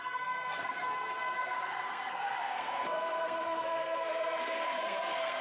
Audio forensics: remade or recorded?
remade